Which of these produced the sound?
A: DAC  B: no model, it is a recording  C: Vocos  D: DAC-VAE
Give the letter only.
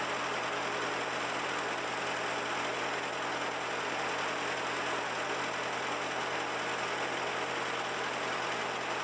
B